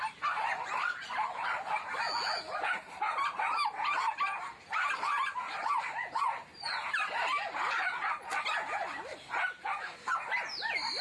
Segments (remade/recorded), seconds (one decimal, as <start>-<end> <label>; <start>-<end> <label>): 0.0-11.0 recorded